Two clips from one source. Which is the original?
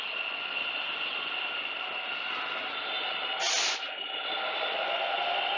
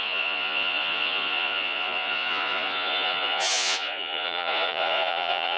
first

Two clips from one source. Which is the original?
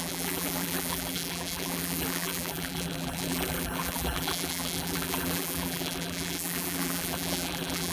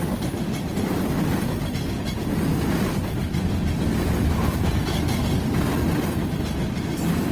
second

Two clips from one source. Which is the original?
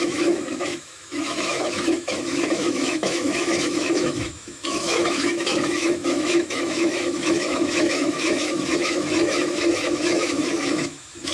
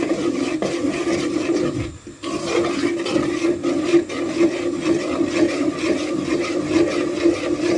second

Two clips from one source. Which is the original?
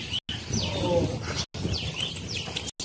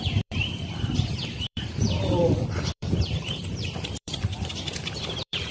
first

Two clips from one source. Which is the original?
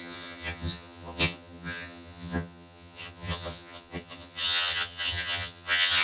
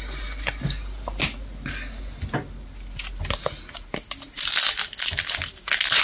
second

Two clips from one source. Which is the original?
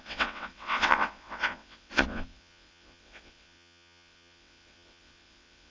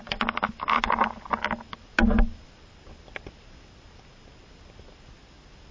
second